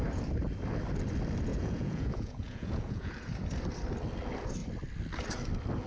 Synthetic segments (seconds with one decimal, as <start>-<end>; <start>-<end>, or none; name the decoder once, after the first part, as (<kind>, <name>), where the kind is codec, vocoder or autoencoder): 1.5-3.1 (vocoder, Vocos)